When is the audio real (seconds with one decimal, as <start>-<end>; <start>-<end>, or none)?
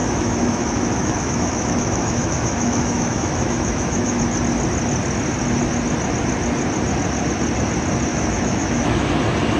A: 4.2-8.1; 9.1-9.6